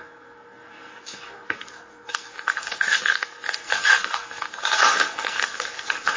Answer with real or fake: fake